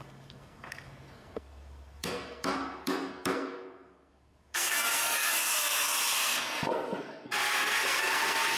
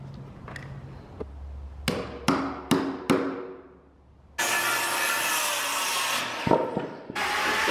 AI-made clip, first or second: first